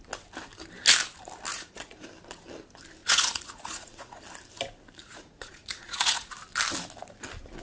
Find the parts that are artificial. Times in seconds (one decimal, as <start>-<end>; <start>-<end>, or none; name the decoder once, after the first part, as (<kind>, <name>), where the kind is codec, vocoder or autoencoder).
1.5-2.1 (vocoder, Vocos); 3.0-4.2; 5.0-6.3

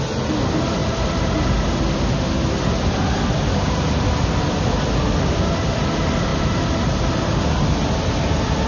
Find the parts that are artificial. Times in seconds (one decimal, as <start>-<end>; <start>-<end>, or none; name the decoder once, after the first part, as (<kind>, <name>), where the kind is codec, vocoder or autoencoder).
none

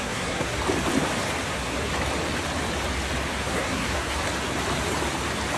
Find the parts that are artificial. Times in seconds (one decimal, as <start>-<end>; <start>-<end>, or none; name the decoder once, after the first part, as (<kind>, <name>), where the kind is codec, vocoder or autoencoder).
0.0-0.6 (codec, SNAC); 1.5-1.9; 3.3-4.2